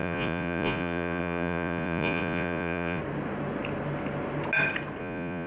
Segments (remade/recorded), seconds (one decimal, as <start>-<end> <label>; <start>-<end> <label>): 0.0-3.0 remade; 3.0-5.0 recorded; 5.0-5.5 remade

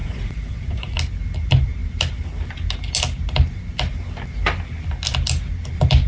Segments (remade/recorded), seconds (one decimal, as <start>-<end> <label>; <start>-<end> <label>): 0.0-1.0 remade; 1.0-6.1 recorded

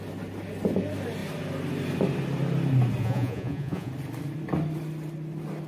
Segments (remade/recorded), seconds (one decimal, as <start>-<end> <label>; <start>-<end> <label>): 0.0-3.0 recorded; 3.0-3.9 remade; 3.9-5.7 recorded

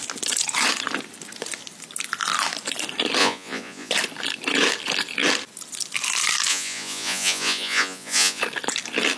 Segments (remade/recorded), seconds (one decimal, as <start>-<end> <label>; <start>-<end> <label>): 0.0-3.2 recorded; 3.2-3.9 remade; 3.9-6.5 recorded; 6.5-8.4 remade; 8.4-9.2 recorded

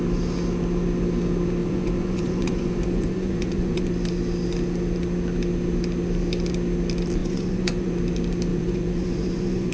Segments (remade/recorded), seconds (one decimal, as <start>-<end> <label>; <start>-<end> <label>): 0.0-1.6 recorded; 1.6-3.9 remade; 3.9-7.2 recorded; 7.2-7.9 remade; 7.9-8.5 recorded; 8.5-9.7 remade

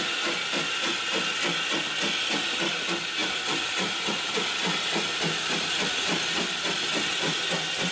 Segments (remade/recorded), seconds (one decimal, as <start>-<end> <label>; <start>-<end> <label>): 0.0-7.9 recorded

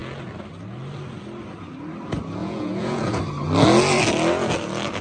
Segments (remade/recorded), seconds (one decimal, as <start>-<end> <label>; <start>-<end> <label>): 0.0-2.4 recorded; 2.4-3.2 remade; 3.2-5.0 recorded